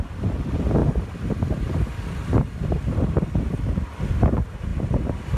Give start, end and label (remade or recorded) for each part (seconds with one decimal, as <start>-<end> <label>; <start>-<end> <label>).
0.0-5.4 recorded